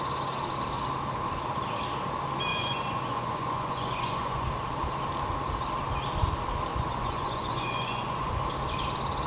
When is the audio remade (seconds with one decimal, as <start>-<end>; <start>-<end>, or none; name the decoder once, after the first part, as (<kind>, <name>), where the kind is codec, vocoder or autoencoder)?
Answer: 2.5-4.5 (vocoder, Vocos); 6.7-8.3